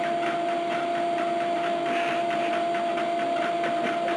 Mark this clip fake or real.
real